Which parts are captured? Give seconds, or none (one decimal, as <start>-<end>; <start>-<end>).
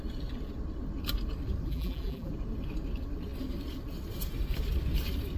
0.0-1.7; 2.3-5.4